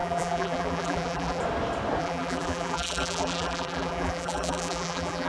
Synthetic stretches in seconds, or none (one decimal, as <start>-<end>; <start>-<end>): 0.0-1.4; 2.0-5.3